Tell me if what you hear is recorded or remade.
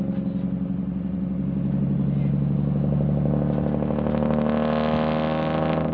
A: recorded